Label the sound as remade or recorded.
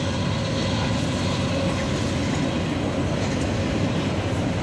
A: recorded